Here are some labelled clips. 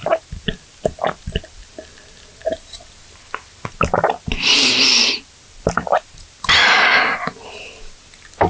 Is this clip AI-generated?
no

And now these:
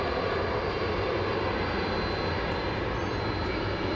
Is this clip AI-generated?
no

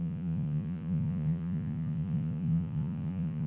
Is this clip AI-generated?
yes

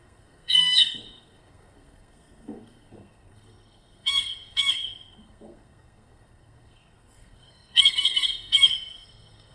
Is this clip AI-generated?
yes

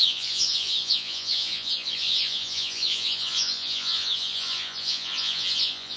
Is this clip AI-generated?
yes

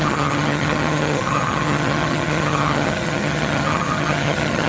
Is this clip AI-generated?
yes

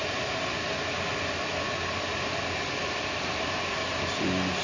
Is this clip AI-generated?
no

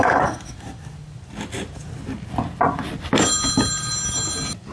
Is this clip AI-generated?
no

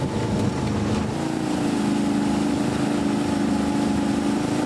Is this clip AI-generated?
no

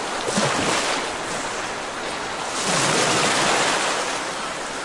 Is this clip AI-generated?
no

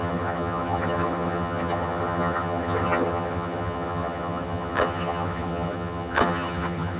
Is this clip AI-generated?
yes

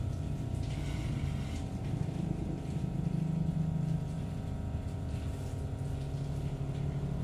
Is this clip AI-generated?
no